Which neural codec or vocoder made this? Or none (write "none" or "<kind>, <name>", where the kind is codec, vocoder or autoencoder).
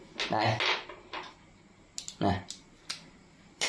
none